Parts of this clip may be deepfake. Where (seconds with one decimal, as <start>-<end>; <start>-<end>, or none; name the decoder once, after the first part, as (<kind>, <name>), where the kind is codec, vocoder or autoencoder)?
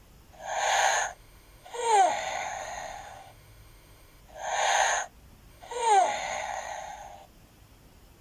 1.1-4.2 (autoencoder, DAC-VAE); 5.5-6.7